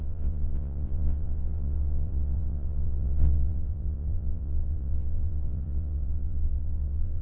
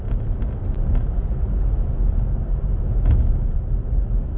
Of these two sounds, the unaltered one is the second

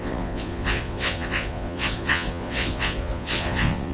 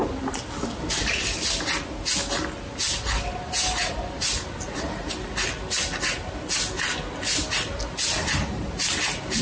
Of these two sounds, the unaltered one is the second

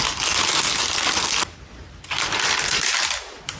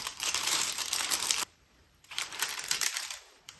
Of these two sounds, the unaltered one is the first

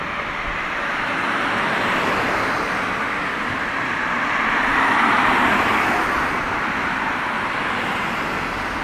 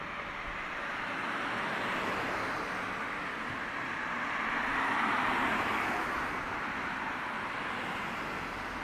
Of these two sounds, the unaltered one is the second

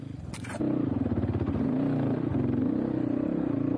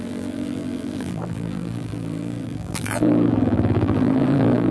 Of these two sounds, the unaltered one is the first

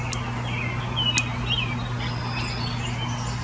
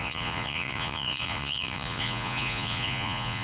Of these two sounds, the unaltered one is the first